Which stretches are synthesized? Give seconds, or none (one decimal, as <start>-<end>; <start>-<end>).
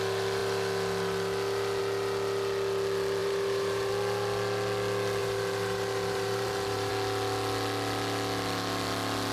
3.2-3.9; 5.2-6.9